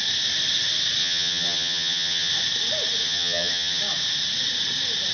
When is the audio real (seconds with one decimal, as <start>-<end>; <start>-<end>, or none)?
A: 0.0-1.0; 2.3-3.0; 3.8-5.1